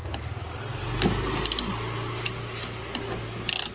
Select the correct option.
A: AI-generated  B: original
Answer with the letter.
B